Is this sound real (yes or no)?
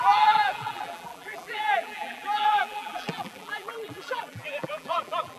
no